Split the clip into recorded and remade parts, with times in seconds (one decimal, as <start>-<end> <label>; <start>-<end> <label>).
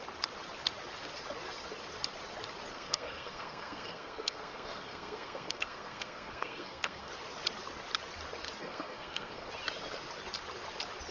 0.0-2.7 recorded; 2.7-7.1 remade; 7.1-8.6 recorded; 8.6-9.5 remade; 9.5-11.1 recorded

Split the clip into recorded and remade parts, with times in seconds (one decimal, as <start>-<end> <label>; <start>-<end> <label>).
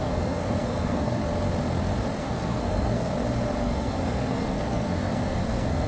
0.0-1.2 remade; 1.2-2.2 recorded; 2.2-3.1 remade; 3.1-3.6 recorded; 3.6-5.9 remade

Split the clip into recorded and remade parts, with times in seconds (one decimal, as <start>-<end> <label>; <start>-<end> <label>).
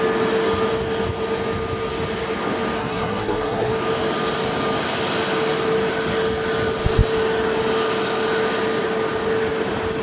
0.0-2.8 recorded; 2.8-3.7 remade; 3.7-10.0 recorded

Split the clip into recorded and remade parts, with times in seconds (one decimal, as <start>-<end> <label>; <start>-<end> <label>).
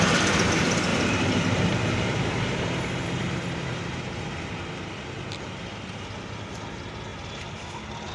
0.0-0.9 recorded; 0.9-4.7 remade; 4.7-7.1 recorded; 7.1-8.1 remade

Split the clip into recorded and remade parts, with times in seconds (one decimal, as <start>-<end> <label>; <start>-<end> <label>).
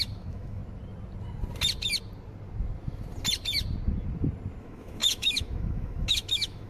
0.0-0.6 remade; 0.6-4.6 recorded; 4.6-6.7 remade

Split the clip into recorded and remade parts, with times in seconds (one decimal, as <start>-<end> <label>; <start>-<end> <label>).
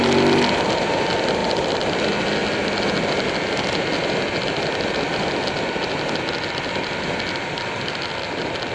0.0-8.7 recorded